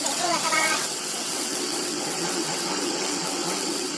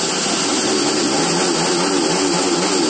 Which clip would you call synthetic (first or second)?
first